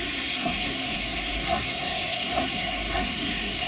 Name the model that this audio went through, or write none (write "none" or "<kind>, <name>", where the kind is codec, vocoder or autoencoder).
codec, SNAC